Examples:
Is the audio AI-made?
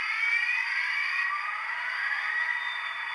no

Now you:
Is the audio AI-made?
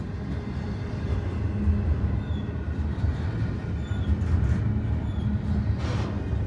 no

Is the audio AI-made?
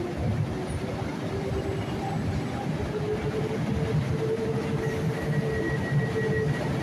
no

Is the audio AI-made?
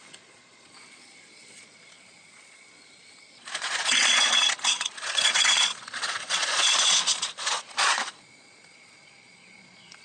yes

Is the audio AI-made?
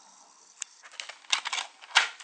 no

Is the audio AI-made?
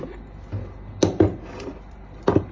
no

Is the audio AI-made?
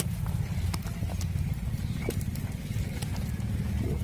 no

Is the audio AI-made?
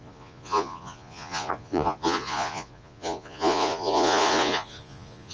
yes